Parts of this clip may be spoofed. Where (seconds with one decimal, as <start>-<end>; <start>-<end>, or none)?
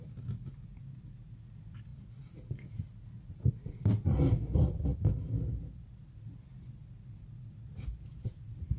0.0-1.9; 3.8-4.9; 5.6-8.8